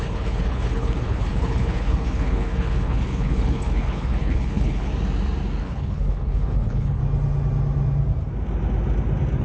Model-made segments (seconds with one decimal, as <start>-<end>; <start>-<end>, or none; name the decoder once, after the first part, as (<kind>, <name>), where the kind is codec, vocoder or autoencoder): 0.0-4.9 (codec, HILCodec); 5.6-7.0